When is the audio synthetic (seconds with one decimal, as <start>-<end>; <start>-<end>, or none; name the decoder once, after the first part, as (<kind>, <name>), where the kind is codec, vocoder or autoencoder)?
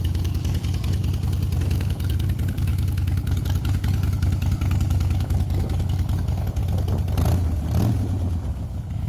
0.0-1.0 (codec, DAC); 1.6-6.6; 8.5-9.1